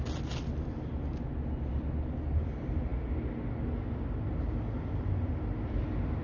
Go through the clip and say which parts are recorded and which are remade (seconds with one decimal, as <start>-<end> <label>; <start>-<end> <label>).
0.0-6.2 recorded